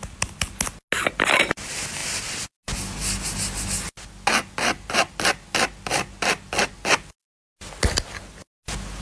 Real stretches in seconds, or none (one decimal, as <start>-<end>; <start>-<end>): 0.0-9.0